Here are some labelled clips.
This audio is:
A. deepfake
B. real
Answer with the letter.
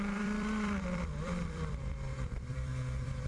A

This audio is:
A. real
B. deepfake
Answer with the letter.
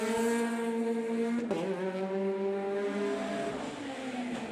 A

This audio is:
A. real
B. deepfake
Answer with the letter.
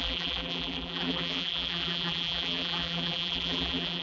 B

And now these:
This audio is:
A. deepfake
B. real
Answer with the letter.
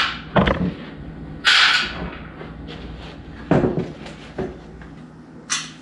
B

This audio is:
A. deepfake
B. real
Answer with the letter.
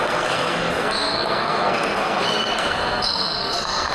A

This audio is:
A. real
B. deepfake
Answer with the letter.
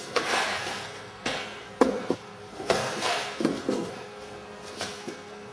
B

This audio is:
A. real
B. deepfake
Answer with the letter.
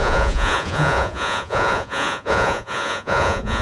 B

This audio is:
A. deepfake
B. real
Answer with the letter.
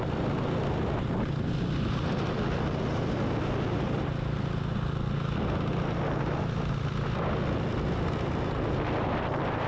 B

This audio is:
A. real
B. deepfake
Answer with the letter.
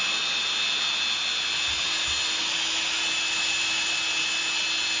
A